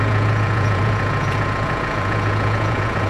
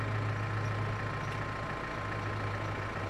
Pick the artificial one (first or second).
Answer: first